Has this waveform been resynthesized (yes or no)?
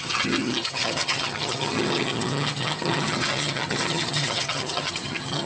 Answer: yes